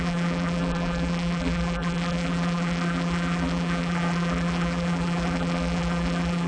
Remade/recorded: remade